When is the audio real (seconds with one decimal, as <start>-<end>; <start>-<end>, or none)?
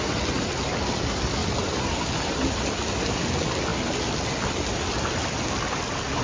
0.0-6.2